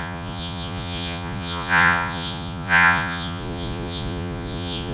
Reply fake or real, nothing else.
fake